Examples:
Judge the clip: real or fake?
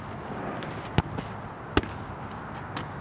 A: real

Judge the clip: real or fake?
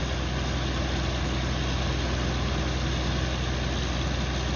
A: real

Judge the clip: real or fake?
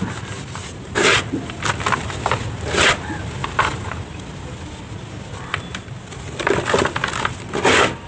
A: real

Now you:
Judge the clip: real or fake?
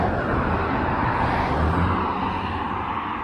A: real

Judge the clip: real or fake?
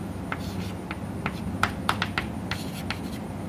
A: real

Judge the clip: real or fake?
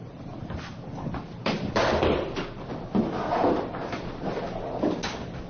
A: real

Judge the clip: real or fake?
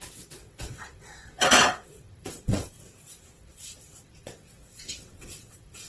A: fake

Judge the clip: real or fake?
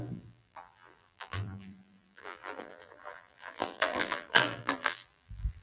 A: fake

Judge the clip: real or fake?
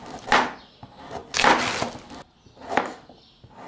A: real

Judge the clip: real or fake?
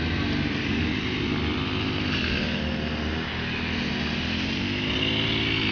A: real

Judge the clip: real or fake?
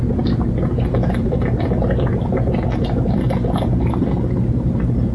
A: real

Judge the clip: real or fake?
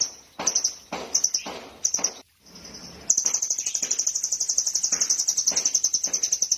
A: real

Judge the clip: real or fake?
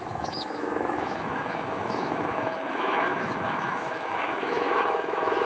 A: fake